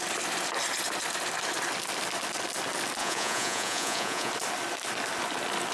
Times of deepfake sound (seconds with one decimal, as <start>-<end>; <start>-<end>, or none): 3.0-4.3